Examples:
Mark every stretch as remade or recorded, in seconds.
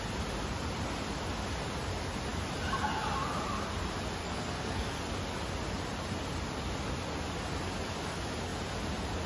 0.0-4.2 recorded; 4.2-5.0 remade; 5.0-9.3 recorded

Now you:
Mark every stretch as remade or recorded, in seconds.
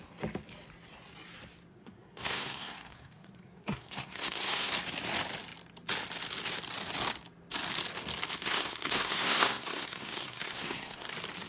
0.0-1.7 recorded; 1.7-4.7 remade; 4.7-8.4 recorded; 8.4-11.1 remade; 11.1-11.5 recorded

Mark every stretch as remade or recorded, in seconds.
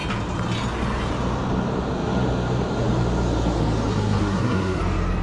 0.0-3.9 recorded; 3.9-4.8 remade; 4.8-5.2 recorded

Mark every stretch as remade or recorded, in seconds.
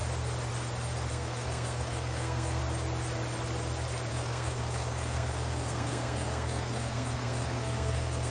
0.0-1.1 recorded; 1.1-2.6 remade; 2.6-4.1 recorded; 4.1-8.3 remade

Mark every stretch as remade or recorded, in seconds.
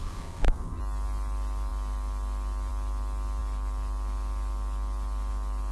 0.0-0.8 remade; 0.8-5.7 recorded